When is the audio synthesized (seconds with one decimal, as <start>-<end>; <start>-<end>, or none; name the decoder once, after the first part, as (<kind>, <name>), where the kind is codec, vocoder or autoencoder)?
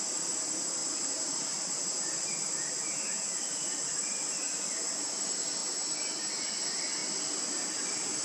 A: 0.8-2.3 (vocoder, BigVGAN v2); 5.6-6.3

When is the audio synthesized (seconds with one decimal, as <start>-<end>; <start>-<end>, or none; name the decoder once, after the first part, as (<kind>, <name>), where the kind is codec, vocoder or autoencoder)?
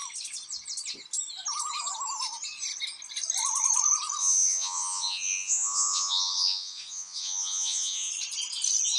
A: 4.2-8.1 (vocoder, Vocos)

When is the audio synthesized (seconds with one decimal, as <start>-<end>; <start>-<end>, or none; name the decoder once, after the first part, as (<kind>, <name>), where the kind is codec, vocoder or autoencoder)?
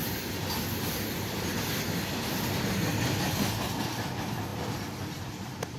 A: 4.5-5.8 (vocoder, BigVGAN v2)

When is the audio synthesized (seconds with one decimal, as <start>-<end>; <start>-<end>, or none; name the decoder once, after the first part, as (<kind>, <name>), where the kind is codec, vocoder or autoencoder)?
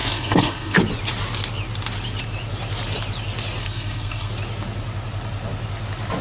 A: 0.0-0.8 (codec, SNAC); 3.6-4.3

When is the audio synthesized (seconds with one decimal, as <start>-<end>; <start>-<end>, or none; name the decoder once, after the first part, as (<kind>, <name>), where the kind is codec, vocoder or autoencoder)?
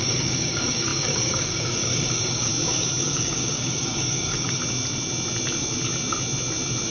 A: 0.0-2.5 (codec, DAC); 3.0-4.6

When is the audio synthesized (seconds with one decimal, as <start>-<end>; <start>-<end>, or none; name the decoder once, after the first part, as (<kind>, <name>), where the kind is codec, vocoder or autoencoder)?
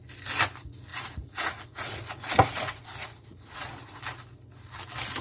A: 0.9-4.0 (vocoder, Vocos)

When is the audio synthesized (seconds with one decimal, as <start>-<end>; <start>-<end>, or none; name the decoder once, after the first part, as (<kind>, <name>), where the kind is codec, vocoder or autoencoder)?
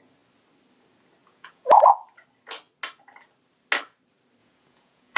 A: 1.2-1.9 (vocoder, Vocos); 4.4-5.2